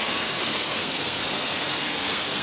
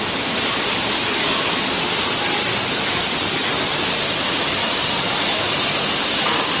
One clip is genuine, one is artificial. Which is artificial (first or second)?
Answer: first